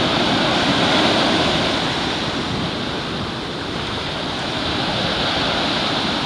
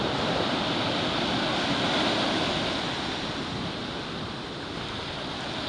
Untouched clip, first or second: second